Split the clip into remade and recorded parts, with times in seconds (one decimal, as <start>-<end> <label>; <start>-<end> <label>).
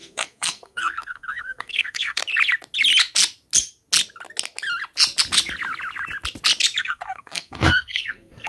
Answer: 0.0-2.2 remade; 2.2-6.8 recorded; 6.8-8.5 remade